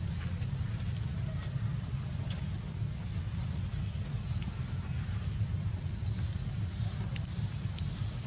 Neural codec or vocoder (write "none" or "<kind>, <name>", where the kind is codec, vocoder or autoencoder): none